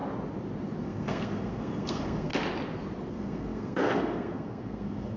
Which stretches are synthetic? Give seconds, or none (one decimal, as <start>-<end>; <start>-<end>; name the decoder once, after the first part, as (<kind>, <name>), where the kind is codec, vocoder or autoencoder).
0.8-2.3 (codec, SNAC); 3.1-5.2